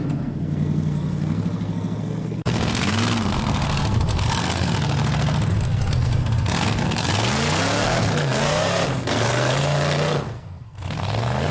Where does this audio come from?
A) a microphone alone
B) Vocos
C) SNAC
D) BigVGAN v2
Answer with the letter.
C